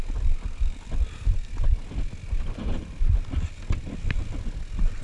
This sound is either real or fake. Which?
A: real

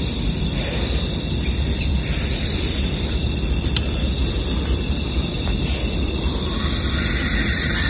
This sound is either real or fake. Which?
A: fake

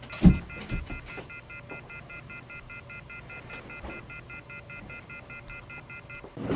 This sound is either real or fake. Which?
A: real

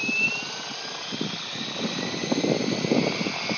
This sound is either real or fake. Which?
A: real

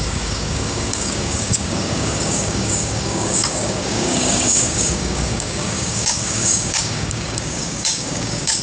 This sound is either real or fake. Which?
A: fake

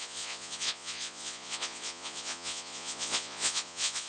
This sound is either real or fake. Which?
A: fake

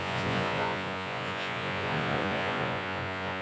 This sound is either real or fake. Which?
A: fake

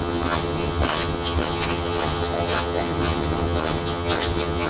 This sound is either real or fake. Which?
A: fake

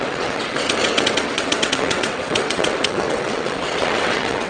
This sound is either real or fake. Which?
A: fake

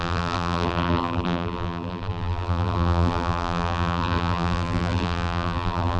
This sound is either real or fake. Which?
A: fake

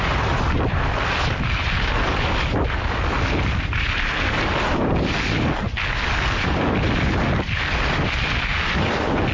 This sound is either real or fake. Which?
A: real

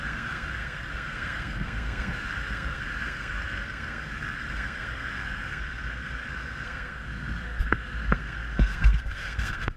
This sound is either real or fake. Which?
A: fake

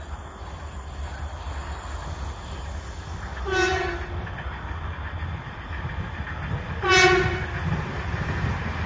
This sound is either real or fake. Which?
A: real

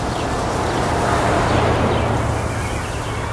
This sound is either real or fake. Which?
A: real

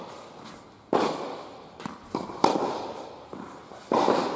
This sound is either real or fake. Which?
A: real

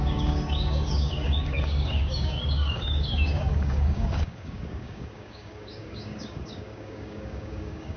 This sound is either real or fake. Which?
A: fake